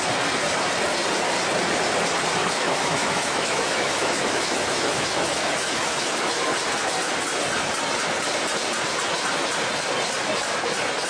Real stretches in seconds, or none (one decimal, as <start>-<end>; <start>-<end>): 0.0-2.4; 6.5-11.1